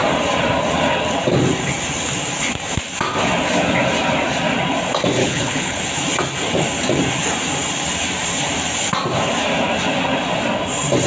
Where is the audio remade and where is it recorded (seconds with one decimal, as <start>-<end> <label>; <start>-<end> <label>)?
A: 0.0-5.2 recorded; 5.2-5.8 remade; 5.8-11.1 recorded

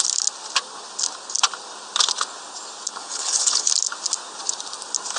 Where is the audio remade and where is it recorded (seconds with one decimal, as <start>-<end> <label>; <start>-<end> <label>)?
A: 0.0-3.0 recorded; 3.0-3.7 remade; 3.7-5.2 recorded

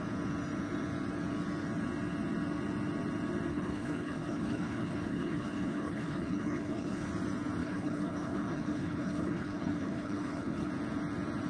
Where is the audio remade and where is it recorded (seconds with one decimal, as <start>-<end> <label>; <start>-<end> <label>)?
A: 0.0-3.5 recorded; 3.5-7.1 remade; 7.1-7.6 recorded; 7.6-10.7 remade; 10.7-11.5 recorded

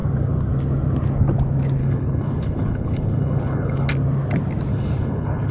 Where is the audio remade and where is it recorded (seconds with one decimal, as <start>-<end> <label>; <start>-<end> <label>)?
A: 0.0-1.8 recorded; 1.8-3.9 remade; 3.9-4.7 recorded; 4.7-5.5 remade

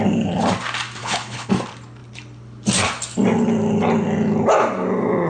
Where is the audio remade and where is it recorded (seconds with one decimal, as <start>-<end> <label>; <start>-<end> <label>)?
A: 0.0-1.0 recorded; 1.0-1.5 remade; 1.5-5.3 recorded

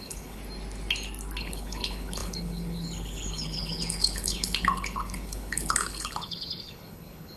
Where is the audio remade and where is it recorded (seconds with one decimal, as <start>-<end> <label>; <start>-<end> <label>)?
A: 0.0-0.4 remade; 0.4-1.4 recorded; 1.4-7.4 remade

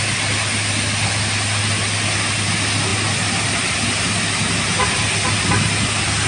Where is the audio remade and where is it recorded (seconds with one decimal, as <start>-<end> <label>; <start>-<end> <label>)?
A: 0.0-6.3 recorded

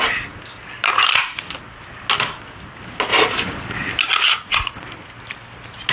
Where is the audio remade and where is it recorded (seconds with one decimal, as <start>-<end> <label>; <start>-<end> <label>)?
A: 0.0-5.9 recorded